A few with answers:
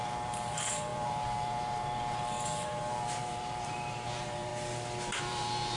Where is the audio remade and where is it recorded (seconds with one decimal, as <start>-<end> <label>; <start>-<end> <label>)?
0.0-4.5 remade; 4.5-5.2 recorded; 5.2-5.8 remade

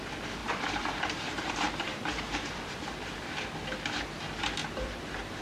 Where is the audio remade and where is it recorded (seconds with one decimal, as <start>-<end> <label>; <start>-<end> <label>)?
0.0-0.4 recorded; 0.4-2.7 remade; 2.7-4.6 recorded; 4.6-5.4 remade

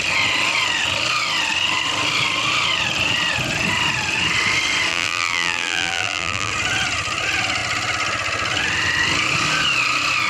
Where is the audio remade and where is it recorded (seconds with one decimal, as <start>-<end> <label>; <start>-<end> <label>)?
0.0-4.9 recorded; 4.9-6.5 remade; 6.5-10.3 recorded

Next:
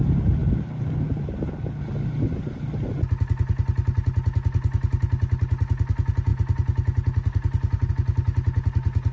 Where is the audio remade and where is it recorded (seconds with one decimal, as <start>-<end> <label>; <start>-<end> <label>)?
0.0-9.1 recorded

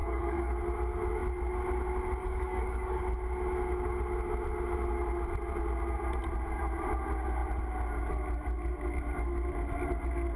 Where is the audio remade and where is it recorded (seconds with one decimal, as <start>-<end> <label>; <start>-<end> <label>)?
0.0-0.5 remade; 0.5-2.2 recorded; 2.2-3.0 remade; 3.0-10.4 recorded

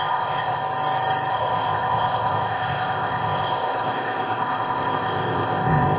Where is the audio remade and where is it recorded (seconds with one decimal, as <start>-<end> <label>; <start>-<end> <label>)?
0.0-0.6 remade; 0.6-1.3 recorded; 1.3-6.0 remade

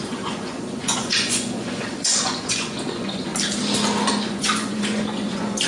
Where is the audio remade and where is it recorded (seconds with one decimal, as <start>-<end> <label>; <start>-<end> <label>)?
0.0-3.3 remade; 3.3-4.2 recorded; 4.2-5.7 remade